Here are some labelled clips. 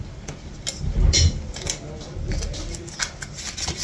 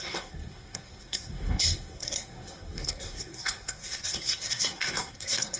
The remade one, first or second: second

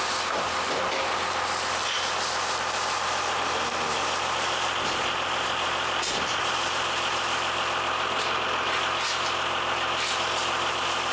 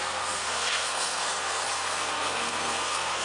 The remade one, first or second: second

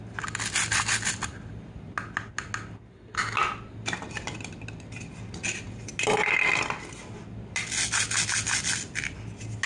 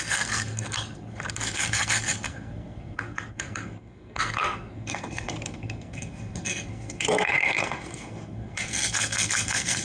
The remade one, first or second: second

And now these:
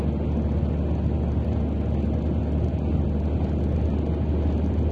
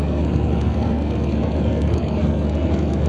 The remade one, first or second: second